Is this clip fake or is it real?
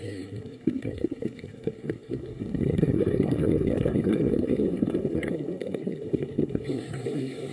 fake